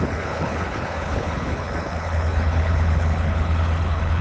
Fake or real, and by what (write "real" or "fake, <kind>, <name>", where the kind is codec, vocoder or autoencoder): fake, codec, HILCodec